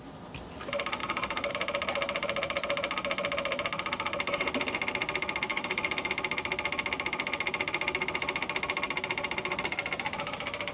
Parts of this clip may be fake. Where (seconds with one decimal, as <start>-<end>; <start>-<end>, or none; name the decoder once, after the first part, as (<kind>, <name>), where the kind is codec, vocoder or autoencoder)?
1.0-1.5 (codec, DAC); 5.5-6.1